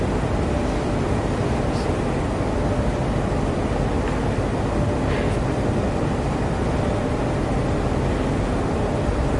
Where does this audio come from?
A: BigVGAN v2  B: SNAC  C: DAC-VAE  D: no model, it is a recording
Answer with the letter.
D